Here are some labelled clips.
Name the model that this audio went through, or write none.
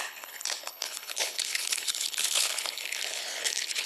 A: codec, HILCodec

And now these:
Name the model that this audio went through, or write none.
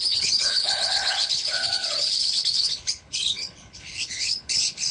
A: codec, HILCodec